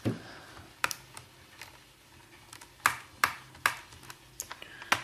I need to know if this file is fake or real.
real